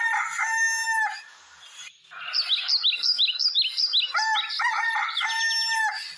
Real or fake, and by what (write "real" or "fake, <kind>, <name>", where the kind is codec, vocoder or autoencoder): real